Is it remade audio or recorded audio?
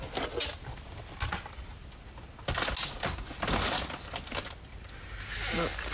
recorded